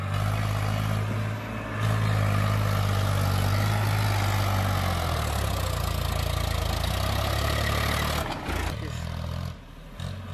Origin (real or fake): real